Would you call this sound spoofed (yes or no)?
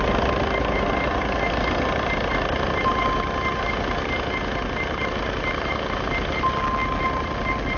no